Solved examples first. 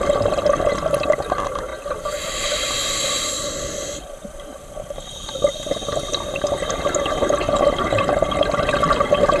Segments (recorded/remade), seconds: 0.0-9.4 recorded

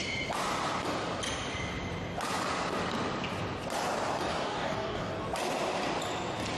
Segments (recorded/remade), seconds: 0.0-4.3 recorded; 4.3-5.1 remade; 5.1-6.6 recorded

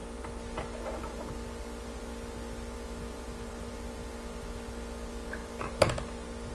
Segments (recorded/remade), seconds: 0.0-6.5 recorded

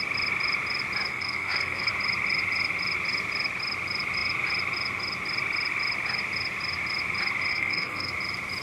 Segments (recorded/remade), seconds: 0.0-1.1 recorded; 1.1-1.9 remade; 1.9-7.5 recorded; 7.5-8.1 remade; 8.1-8.6 recorded